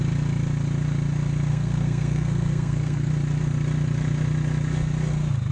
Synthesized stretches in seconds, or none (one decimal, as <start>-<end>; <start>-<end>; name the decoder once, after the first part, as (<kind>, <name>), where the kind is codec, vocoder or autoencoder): 1.5-3.1 (codec, SNAC)